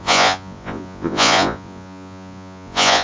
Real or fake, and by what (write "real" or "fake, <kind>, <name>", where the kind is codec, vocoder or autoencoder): fake, vocoder, Vocos